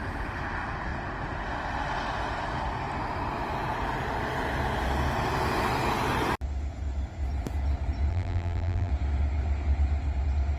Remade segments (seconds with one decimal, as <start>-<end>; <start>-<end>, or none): 8.1-8.9

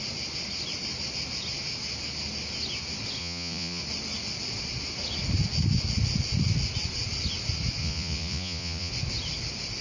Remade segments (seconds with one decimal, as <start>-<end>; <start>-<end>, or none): 3.2-3.8; 7.8-8.9

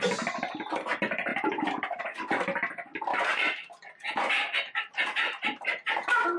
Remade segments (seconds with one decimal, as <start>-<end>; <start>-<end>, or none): 1.3-2.0; 3.1-5.0

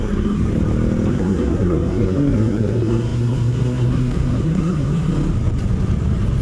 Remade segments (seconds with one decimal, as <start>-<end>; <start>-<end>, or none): 0.0-0.5; 1.1-5.1

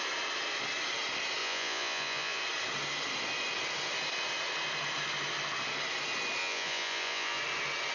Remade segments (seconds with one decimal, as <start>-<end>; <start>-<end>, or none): 1.4-2.4; 6.4-7.4

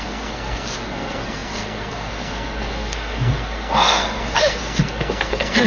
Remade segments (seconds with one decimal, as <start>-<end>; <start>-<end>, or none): 0.0-5.7